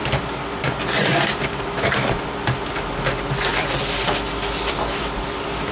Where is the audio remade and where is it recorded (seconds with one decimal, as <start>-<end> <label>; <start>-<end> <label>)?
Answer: 0.0-1.4 remade; 1.4-3.5 recorded; 3.5-5.0 remade; 5.0-5.7 recorded